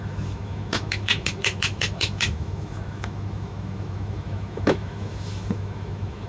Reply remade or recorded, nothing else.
remade